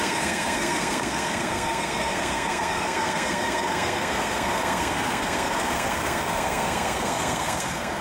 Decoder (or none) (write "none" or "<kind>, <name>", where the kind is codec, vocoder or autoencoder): codec, SNAC